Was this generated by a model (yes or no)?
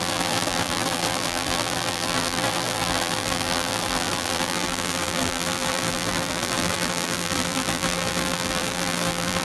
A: yes